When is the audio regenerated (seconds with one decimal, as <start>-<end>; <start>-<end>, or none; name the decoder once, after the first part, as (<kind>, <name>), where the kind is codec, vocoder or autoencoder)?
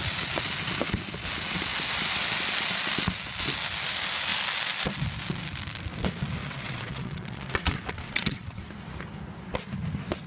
6.4-8.6 (vocoder, WaveNeXt)